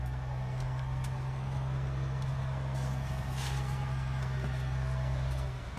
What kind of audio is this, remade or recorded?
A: remade